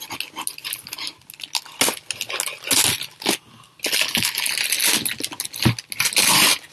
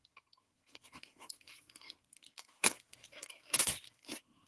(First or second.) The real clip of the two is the first